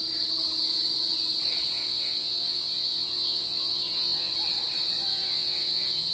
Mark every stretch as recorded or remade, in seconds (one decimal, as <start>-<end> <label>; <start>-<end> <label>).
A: 0.0-1.7 recorded; 1.7-4.3 remade; 4.3-5.1 recorded; 5.1-6.1 remade